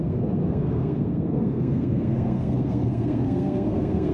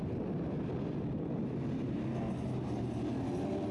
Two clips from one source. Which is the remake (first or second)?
first